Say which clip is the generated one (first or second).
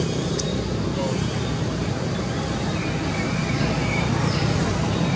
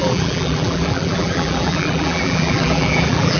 second